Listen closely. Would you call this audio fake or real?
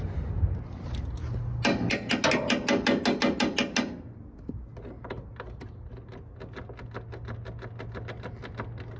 real